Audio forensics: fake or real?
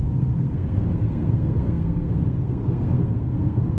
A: fake